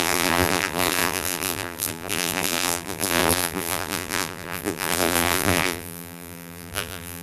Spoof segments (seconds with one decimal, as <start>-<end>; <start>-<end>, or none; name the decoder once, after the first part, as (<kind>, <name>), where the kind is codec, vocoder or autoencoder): 0.0-7.2 (vocoder, BigVGAN v2)